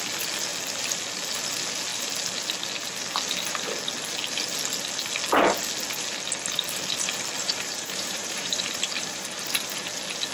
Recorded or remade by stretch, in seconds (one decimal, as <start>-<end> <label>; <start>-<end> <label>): 0.0-7.4 recorded; 7.4-9.9 remade; 9.9-10.3 recorded

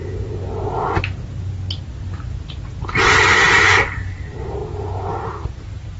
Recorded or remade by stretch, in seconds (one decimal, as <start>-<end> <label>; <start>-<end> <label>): 0.0-4.6 recorded; 4.6-6.0 remade

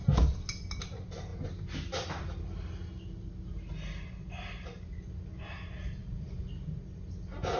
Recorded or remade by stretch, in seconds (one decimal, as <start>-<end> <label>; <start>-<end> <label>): 0.0-7.6 recorded

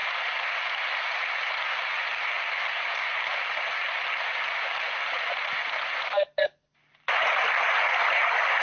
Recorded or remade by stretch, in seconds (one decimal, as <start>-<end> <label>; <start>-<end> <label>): 0.0-8.6 recorded

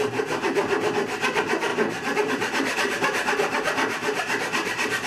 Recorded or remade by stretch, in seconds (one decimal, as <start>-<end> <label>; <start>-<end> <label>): 0.0-1.7 recorded; 1.7-5.1 remade

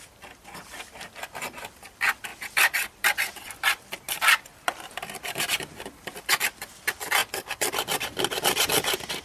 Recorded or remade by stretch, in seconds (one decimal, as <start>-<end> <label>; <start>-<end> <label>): 0.0-2.3 recorded; 2.3-6.3 remade; 6.3-7.2 recorded; 7.2-8.3 remade; 8.3-9.2 recorded

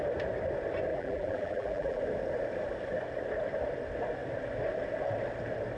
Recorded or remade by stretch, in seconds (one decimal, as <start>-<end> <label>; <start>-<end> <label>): 0.0-0.9 recorded; 0.9-2.0 remade; 2.0-5.8 recorded